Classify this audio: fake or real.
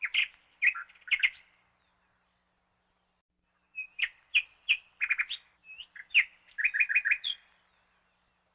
real